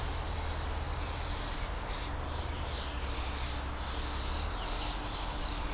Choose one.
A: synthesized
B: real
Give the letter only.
B